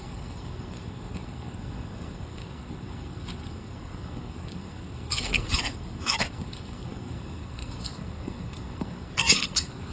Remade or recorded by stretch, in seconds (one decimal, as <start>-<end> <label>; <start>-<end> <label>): 0.0-9.9 remade